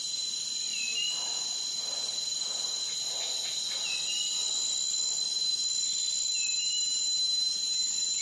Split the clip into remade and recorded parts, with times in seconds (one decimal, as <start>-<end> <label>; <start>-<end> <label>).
0.0-0.7 remade; 0.7-2.0 recorded; 2.0-4.4 remade; 4.4-6.3 recorded; 6.3-8.2 remade